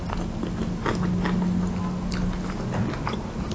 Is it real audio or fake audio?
real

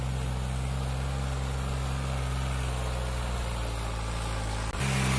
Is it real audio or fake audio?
real